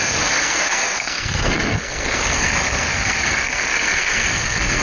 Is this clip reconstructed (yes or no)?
yes